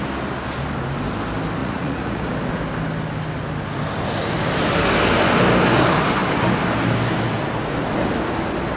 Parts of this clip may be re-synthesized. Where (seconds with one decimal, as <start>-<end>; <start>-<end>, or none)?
1.6-2.2